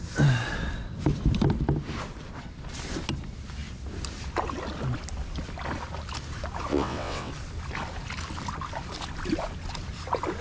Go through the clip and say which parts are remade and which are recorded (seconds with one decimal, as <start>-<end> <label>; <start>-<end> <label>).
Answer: 0.0-6.7 recorded; 6.7-7.3 remade; 7.3-10.4 recorded